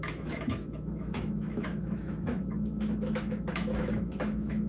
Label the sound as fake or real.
fake